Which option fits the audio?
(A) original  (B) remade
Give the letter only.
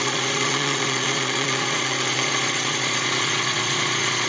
B